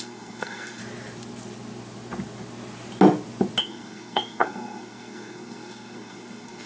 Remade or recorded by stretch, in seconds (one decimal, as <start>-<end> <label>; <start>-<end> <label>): 0.0-0.8 remade; 0.8-3.6 recorded; 3.6-6.7 remade